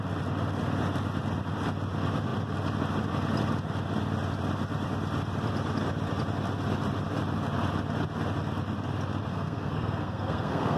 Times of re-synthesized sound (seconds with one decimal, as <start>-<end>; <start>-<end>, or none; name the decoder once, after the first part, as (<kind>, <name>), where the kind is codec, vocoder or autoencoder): 9.3-10.8 (codec, SNAC)